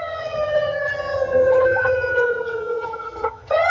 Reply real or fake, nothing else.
fake